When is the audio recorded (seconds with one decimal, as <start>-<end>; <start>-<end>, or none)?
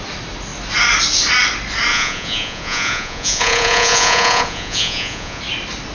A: 0.0-1.9; 5.4-5.9